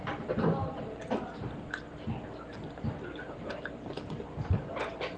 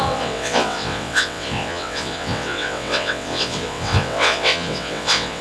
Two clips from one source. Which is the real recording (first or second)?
first